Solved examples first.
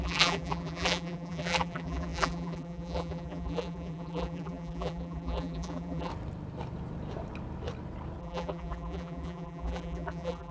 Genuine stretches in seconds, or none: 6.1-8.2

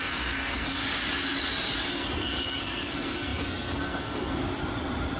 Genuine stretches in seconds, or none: 0.8-1.9; 4.4-5.2